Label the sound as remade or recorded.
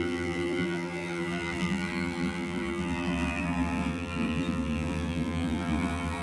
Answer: remade